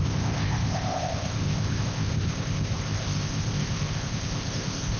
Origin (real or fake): fake